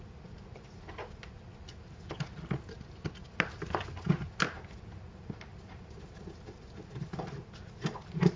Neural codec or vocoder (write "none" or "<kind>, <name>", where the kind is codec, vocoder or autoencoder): none